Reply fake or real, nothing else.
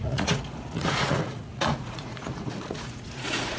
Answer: fake